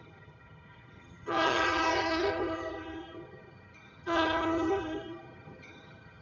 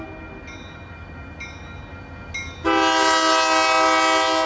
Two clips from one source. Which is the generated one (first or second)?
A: first